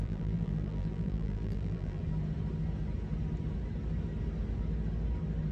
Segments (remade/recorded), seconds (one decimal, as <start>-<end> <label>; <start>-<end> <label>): 0.0-2.0 remade; 2.0-5.5 recorded